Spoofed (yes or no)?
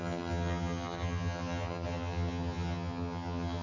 yes